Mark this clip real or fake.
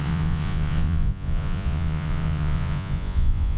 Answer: fake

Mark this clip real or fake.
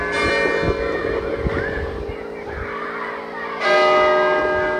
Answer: real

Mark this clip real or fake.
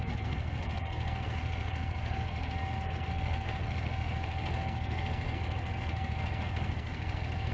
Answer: fake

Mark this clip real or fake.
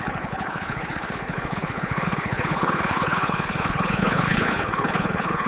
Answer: fake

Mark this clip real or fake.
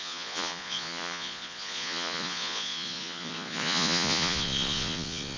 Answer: fake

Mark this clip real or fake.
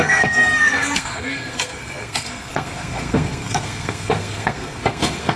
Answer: fake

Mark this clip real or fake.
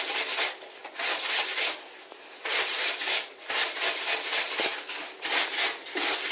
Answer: real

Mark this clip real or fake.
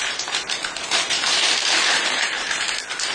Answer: fake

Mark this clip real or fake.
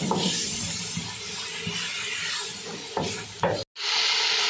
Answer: real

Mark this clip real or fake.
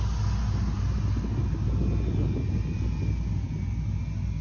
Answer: real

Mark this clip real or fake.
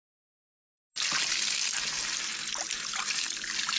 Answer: real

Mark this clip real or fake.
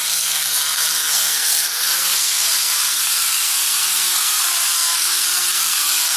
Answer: fake